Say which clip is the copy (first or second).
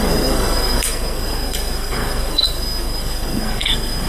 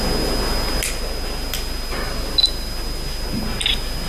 first